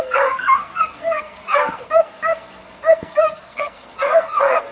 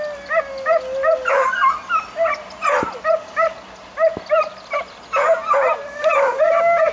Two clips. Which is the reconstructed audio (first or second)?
first